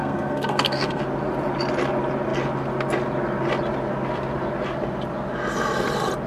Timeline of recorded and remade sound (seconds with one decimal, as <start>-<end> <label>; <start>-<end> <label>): 0.0-1.0 remade; 1.0-6.3 recorded